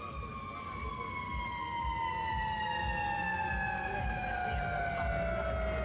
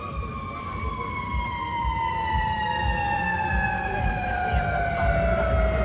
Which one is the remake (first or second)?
second